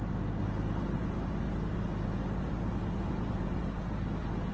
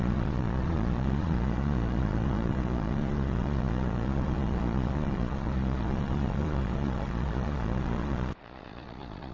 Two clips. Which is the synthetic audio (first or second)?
second